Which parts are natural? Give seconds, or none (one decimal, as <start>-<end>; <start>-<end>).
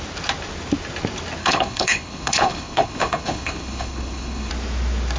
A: 0.0-1.4; 4.5-5.2